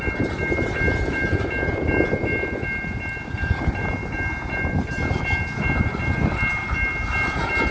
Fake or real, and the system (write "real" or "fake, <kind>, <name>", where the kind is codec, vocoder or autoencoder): real